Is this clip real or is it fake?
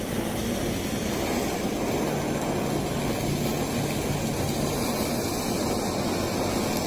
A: real